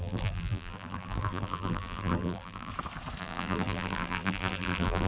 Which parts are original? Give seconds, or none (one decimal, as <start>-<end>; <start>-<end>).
2.7-3.2

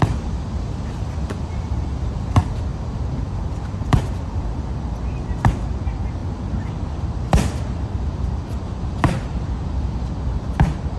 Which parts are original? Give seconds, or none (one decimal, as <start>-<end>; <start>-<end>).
6.2-7.0

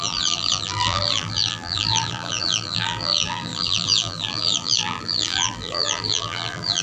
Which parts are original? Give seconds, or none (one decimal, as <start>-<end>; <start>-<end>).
none

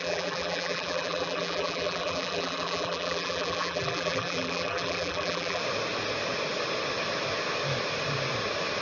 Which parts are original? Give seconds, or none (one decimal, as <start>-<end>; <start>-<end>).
5.6-8.8

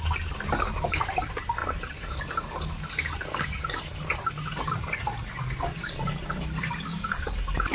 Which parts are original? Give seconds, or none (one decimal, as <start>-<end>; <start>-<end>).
0.0-1.6; 4.6-7.7

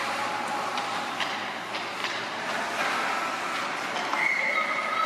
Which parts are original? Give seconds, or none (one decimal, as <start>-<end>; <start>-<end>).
1.5-2.0; 2.6-4.1